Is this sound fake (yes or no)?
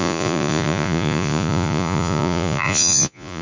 yes